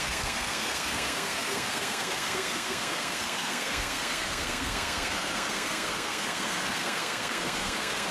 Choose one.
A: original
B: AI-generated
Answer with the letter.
B